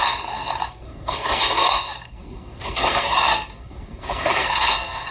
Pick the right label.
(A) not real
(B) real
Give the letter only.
A